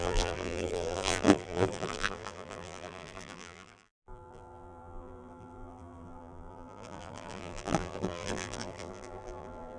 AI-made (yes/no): yes